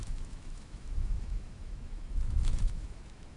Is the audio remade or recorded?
remade